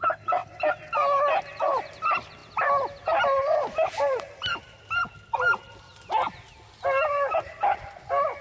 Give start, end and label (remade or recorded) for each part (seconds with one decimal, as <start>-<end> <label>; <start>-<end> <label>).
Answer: 0.0-8.4 recorded